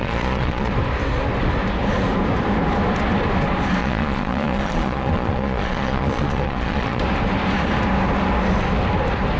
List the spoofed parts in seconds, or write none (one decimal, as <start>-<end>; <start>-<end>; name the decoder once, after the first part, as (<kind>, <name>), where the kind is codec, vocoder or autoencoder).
0.0-0.7 (vocoder, Vocos); 3.8-7.0